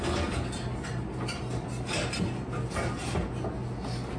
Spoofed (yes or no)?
no